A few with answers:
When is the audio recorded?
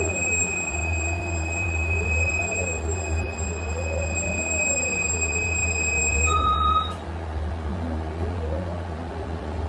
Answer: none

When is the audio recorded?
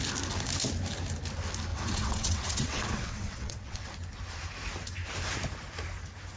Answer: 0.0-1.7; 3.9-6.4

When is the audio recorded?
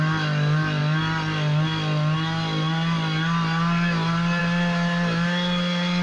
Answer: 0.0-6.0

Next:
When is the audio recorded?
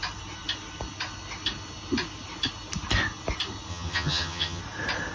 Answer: 0.0-3.7; 4.6-5.1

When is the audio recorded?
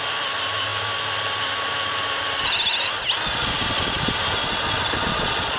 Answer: 0.0-5.1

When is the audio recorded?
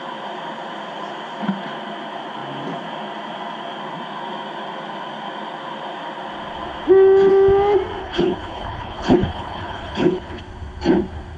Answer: 0.0-8.0; 10.4-11.4